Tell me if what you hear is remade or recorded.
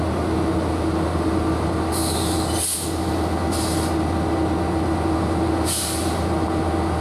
recorded